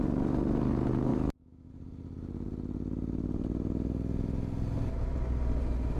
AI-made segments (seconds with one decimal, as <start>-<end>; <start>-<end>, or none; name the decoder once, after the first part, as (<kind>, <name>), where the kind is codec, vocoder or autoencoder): 1.1-1.7 (autoencoder, DAC-VAE)